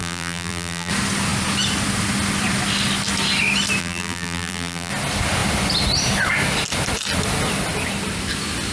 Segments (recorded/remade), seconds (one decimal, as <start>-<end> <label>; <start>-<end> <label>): 0.0-0.9 remade; 0.9-3.8 recorded; 3.8-4.9 remade; 4.9-8.7 recorded